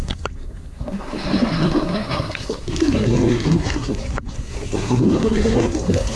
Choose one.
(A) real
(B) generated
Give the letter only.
B